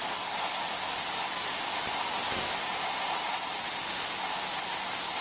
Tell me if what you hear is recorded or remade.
recorded